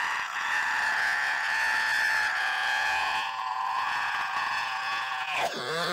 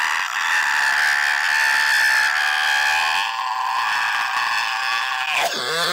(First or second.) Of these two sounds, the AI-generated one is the first